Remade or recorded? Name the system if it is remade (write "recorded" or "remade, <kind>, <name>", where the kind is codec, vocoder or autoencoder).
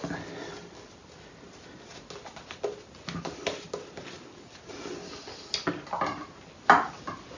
recorded